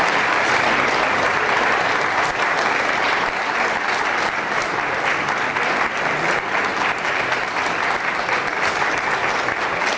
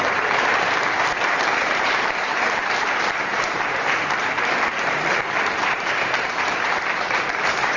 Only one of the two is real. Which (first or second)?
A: first